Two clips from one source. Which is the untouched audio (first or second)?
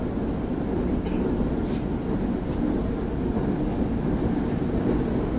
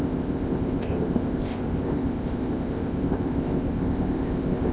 first